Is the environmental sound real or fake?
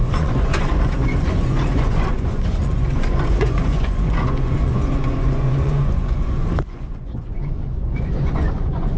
fake